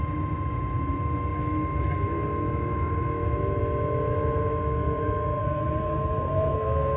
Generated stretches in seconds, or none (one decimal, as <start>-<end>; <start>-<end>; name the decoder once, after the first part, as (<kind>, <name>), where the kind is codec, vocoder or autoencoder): 5.4-7.0 (codec, SNAC)